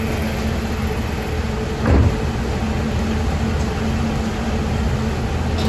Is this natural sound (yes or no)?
yes